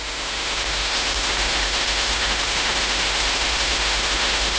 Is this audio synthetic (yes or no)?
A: yes